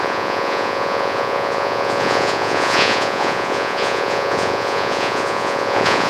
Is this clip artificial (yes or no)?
yes